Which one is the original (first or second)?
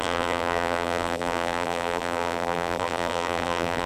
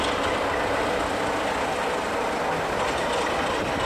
second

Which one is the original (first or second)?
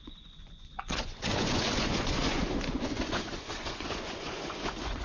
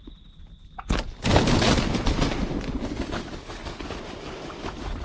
second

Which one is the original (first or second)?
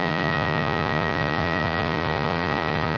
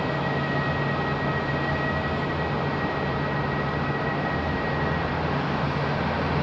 second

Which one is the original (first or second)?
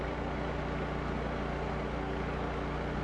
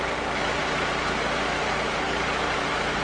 first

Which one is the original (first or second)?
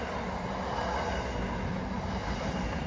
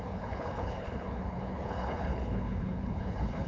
first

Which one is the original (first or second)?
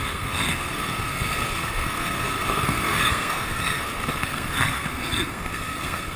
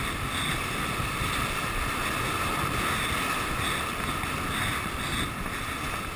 second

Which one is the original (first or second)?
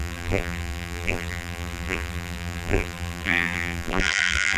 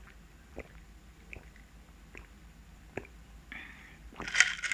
second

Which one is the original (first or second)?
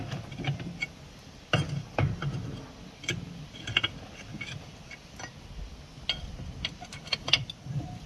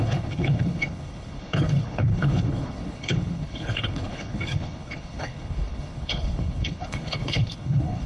first